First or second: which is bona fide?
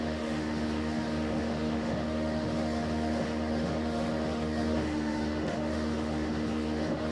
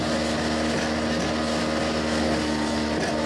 second